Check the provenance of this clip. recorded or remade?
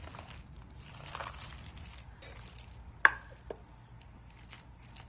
recorded